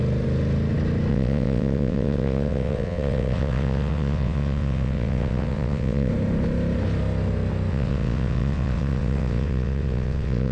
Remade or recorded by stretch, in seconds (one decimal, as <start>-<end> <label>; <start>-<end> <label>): 0.0-1.1 recorded; 1.1-6.1 remade; 6.1-7.7 recorded; 7.7-10.5 remade

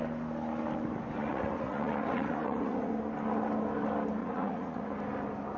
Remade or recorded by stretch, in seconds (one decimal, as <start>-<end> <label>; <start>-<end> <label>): 0.0-1.2 recorded; 1.2-2.9 remade; 2.9-4.2 recorded; 4.2-4.8 remade; 4.8-5.6 recorded

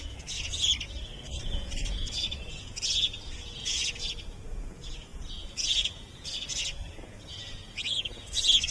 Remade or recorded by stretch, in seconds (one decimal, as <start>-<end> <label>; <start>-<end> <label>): 0.0-0.7 remade; 0.7-1.4 recorded; 1.4-8.7 remade